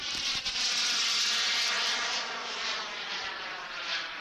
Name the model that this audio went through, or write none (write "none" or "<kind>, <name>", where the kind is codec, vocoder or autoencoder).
none